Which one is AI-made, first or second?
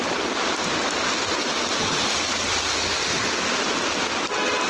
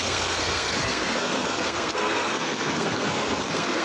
second